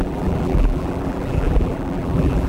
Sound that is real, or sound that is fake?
fake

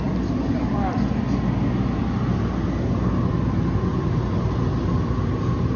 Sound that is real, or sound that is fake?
real